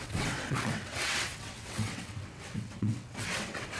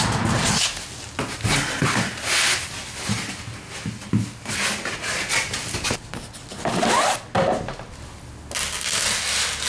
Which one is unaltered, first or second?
second